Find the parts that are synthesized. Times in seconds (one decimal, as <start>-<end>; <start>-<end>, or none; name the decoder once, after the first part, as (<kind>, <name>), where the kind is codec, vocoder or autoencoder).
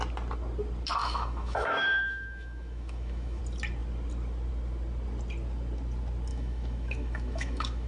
1.0-3.4 (autoencoder, DAC-VAE); 6.3-7.9